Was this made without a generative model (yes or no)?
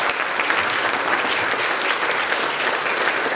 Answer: yes